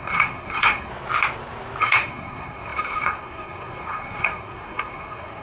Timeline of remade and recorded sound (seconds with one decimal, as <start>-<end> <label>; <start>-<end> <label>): 0.0-0.9 remade; 0.9-1.8 recorded; 1.8-5.4 remade